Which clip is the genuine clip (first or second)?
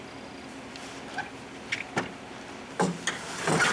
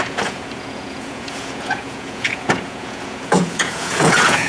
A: first